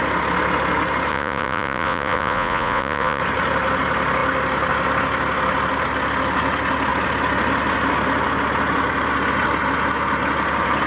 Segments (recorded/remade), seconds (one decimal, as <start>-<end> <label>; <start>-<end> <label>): 0.0-1.1 recorded; 1.1-3.2 remade; 3.2-10.9 recorded